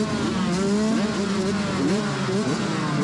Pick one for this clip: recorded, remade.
recorded